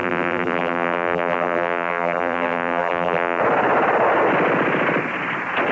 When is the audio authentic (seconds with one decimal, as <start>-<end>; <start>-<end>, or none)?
3.4-5.7